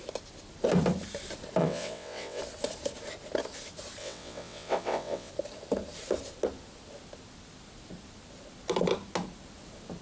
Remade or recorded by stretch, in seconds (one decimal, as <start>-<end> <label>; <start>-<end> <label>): 0.0-1.6 recorded; 1.6-2.4 remade; 2.4-4.0 recorded; 4.0-5.3 remade; 5.3-10.0 recorded